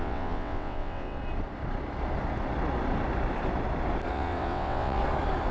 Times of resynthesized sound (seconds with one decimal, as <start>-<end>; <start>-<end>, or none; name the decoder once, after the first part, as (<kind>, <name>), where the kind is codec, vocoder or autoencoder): 0.0-1.2 (vocoder, WaveNeXt); 4.1-5.0